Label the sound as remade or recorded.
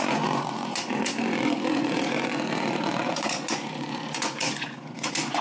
remade